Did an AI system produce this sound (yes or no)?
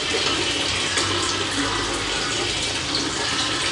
no